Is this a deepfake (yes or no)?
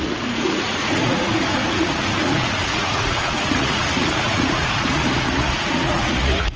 yes